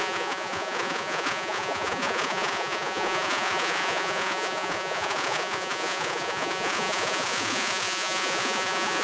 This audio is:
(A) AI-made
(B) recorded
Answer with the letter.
A